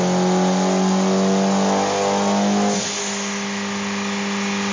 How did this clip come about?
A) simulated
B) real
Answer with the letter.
B